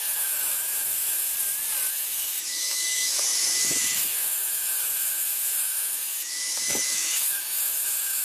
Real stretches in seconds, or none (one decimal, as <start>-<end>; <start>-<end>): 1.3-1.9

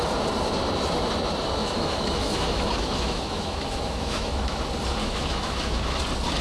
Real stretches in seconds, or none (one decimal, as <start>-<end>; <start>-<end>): 0.0-1.6; 4.6-5.0; 6.0-6.4

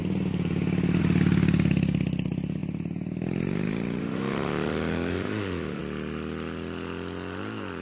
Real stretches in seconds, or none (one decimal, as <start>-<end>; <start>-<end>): 0.0-4.0; 5.8-7.8